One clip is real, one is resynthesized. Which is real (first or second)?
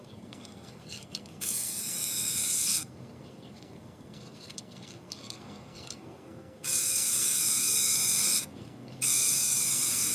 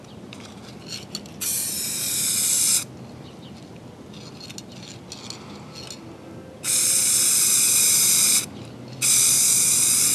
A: second